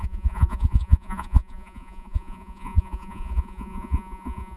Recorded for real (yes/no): no